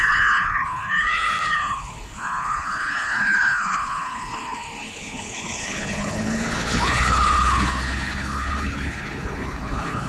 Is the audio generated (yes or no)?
yes